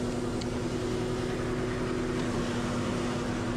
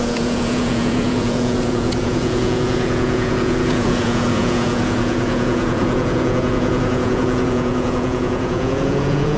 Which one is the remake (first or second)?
second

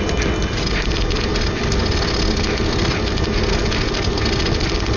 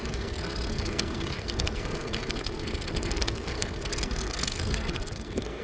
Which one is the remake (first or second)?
second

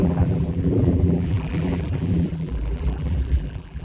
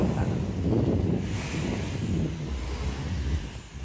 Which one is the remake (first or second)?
first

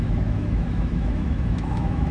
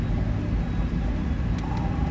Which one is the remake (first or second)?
first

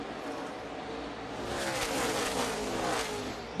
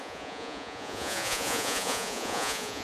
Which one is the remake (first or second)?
second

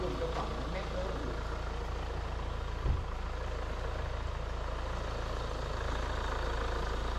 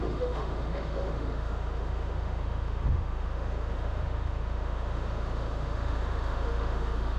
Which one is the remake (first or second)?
second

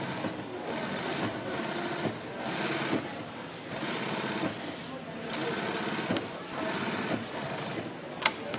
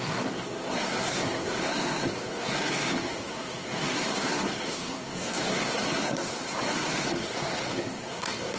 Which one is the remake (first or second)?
second